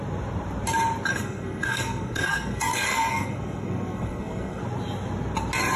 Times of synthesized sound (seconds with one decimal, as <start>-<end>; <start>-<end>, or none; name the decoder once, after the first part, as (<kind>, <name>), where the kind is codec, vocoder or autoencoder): 1.1-4.6 (codec, SNAC)